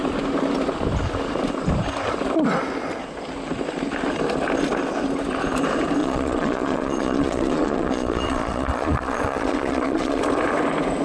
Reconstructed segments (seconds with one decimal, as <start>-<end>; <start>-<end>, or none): 6.0-10.2

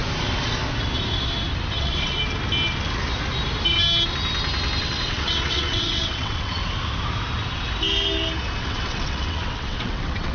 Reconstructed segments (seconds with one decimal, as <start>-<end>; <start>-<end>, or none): 1.8-2.2; 4.8-6.6; 8.6-10.3

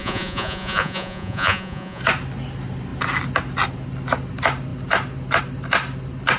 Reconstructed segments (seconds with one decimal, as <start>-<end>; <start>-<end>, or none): 0.0-2.0